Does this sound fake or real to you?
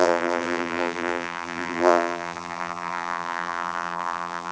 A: fake